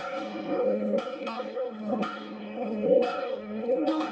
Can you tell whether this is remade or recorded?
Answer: remade